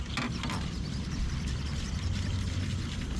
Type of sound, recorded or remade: recorded